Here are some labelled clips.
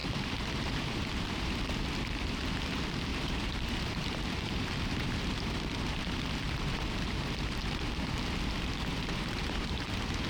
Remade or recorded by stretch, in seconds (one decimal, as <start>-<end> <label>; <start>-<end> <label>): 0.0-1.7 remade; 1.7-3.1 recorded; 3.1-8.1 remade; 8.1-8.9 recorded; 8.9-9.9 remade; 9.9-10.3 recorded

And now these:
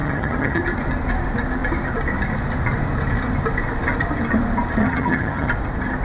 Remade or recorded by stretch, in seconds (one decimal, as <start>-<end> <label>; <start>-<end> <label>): 0.0-0.6 remade; 0.6-4.8 recorded; 4.8-5.5 remade; 5.5-6.0 recorded

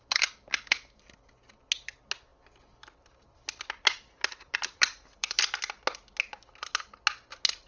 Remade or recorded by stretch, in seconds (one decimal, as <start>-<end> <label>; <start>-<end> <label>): 0.0-2.3 recorded; 2.3-5.4 remade; 5.4-7.7 recorded

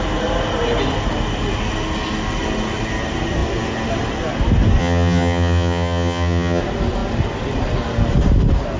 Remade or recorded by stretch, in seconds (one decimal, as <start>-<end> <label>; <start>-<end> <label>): 0.0-4.8 recorded; 4.8-6.6 remade; 6.6-8.8 recorded

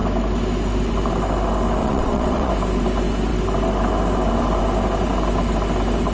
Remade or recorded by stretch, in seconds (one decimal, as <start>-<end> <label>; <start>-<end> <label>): 0.0-1.8 recorded; 1.8-2.5 remade; 2.5-6.1 recorded

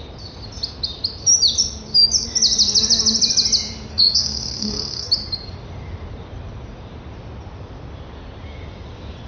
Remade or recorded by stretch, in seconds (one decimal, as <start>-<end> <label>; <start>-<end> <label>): 0.0-3.9 recorded; 3.9-5.1 remade; 5.1-9.3 recorded

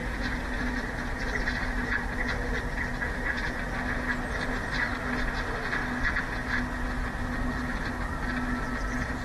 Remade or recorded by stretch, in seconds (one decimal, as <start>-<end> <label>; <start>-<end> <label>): 0.0-9.2 recorded